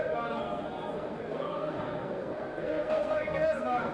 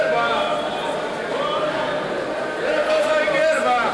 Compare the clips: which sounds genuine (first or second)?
second